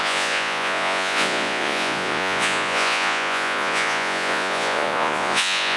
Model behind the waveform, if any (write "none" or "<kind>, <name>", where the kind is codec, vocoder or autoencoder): vocoder, Vocos